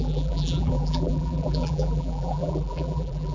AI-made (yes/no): yes